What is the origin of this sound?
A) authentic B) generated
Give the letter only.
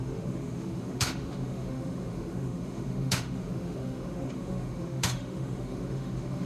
B